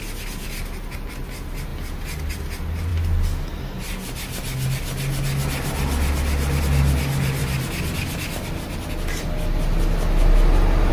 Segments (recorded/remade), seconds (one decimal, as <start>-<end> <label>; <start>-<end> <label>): 0.0-10.9 recorded